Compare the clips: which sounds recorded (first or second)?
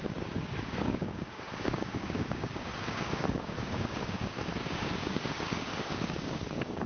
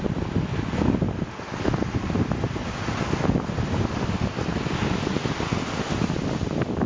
second